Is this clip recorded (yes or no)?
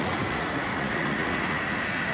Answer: no